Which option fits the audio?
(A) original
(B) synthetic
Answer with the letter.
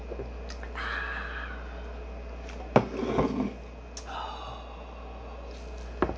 A